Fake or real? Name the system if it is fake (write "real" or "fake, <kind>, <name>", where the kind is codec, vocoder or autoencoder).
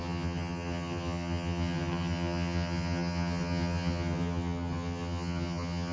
fake, vocoder, HiFi-GAN